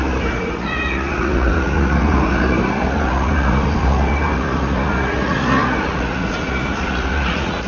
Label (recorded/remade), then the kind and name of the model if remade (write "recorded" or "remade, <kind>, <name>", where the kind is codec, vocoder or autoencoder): remade, vocoder, Vocos